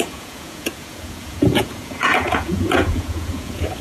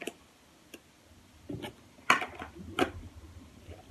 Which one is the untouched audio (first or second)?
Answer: second